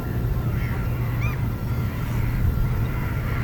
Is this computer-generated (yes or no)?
yes